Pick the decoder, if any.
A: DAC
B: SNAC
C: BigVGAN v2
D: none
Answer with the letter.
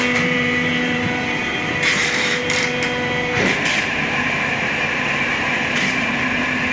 C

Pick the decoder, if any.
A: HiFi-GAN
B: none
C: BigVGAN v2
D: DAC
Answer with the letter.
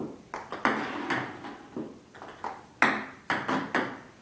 B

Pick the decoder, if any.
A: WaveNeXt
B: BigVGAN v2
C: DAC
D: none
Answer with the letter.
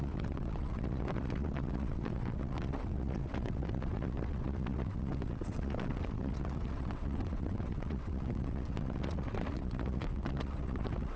A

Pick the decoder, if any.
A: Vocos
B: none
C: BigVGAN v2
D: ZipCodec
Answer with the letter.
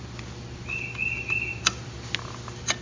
B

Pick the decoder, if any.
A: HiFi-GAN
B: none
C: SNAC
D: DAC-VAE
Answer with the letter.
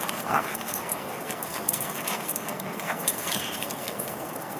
C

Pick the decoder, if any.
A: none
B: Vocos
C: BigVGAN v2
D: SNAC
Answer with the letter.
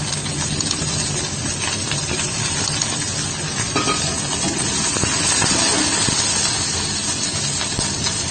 A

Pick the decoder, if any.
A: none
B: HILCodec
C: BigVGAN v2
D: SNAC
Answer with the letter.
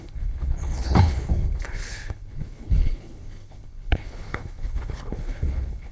B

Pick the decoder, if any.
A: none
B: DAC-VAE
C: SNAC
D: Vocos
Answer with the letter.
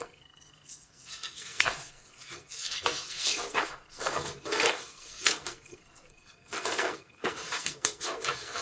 C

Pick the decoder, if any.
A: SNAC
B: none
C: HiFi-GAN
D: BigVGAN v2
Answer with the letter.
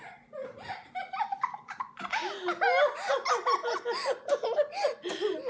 B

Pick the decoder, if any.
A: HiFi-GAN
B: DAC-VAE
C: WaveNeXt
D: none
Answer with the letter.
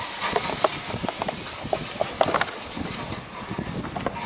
D